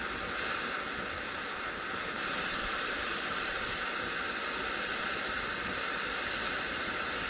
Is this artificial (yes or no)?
no